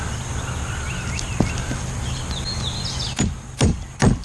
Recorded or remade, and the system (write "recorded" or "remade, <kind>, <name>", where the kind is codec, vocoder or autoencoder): recorded